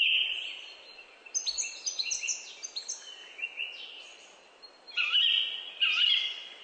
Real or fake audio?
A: real